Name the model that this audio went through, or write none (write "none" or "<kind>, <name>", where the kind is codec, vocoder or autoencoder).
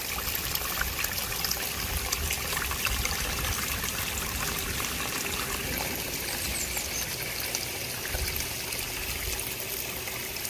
none